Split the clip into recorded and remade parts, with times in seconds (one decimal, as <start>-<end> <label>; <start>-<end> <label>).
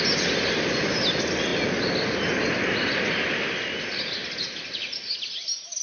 0.0-5.8 recorded